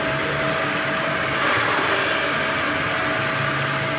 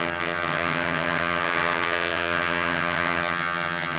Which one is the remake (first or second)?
second